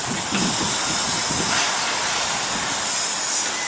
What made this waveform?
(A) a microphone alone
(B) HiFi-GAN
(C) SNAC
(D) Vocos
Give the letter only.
A